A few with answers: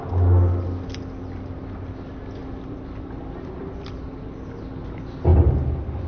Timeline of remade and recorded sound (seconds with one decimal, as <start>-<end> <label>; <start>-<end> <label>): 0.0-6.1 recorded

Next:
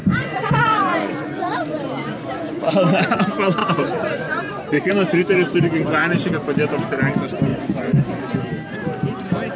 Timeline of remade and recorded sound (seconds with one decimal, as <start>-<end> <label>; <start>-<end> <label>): 0.0-2.7 remade; 2.7-3.6 recorded; 3.6-4.9 remade; 4.9-7.5 recorded; 7.5-8.2 remade; 8.2-9.6 recorded

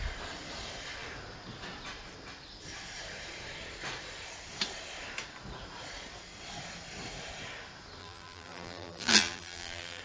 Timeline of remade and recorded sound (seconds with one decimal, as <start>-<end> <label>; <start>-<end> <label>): 0.0-8.0 recorded; 8.0-10.0 remade

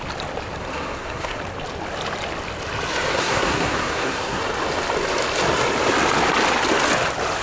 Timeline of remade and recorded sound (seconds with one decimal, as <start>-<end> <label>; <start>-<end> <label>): 0.0-0.7 recorded; 0.7-1.4 remade; 1.4-3.1 recorded; 3.1-4.4 remade; 4.4-7.4 recorded

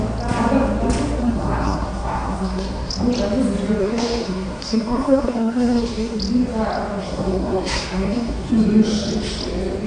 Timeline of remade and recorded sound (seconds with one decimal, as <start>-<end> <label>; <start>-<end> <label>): 0.0-1.2 recorded; 1.2-2.9 remade; 2.9-3.8 recorded; 3.8-6.2 remade; 6.2-7.0 recorded; 7.0-8.5 remade; 8.5-9.9 recorded